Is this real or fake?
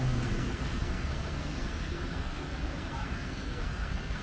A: fake